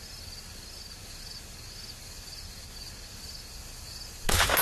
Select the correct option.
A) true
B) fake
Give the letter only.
A